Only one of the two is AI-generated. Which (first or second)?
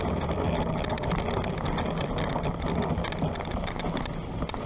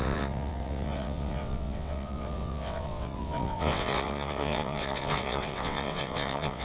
second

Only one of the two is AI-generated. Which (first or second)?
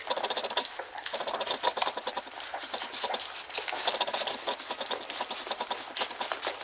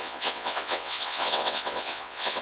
second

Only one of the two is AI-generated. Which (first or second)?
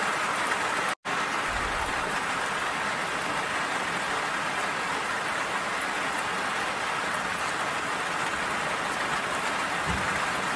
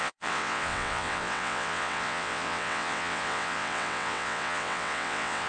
second